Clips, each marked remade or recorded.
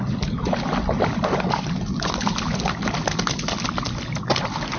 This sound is recorded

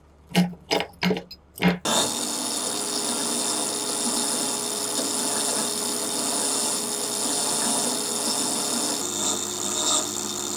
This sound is recorded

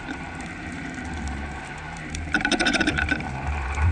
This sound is remade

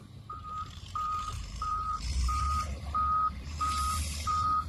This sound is remade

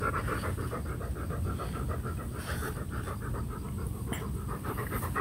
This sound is recorded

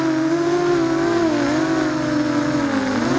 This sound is recorded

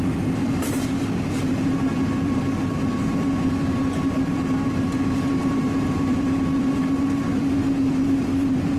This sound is remade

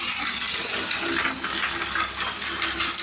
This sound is recorded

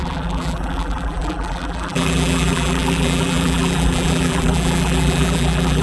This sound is remade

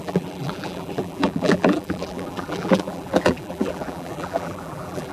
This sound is remade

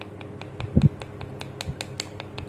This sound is recorded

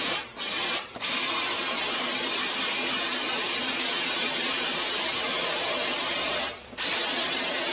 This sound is remade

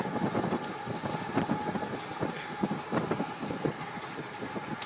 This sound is recorded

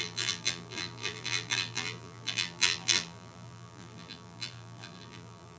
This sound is remade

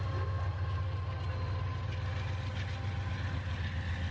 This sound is recorded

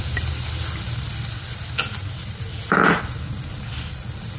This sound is recorded